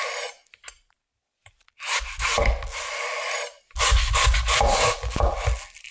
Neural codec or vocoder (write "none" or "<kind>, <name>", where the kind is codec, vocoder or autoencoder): none